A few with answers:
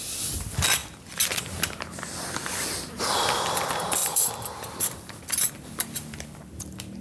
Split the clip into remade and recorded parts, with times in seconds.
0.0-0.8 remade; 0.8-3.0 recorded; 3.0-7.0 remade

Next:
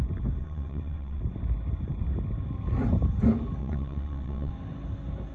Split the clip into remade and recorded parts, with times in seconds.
0.0-0.4 recorded; 0.4-1.2 remade; 1.2-3.6 recorded; 3.6-4.5 remade; 4.5-5.3 recorded

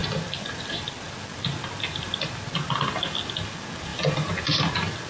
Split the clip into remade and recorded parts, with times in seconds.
0.0-0.8 remade; 0.8-3.9 recorded; 3.9-5.1 remade

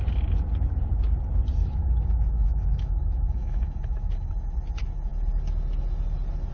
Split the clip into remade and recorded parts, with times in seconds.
0.0-1.6 recorded; 1.6-4.3 remade; 4.3-6.5 recorded

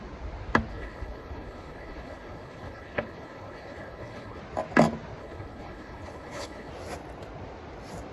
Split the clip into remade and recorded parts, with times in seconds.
0.0-0.7 recorded; 0.7-4.4 remade; 4.4-5.2 recorded; 5.2-6.7 remade; 6.7-8.1 recorded

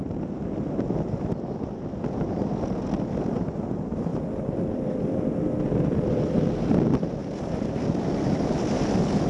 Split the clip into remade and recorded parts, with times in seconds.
0.0-4.1 recorded; 4.1-5.2 remade; 5.2-7.2 recorded; 7.2-7.7 remade; 7.7-9.3 recorded